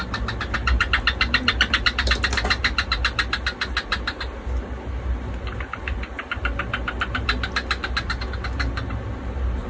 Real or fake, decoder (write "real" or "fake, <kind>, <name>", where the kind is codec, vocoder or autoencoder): real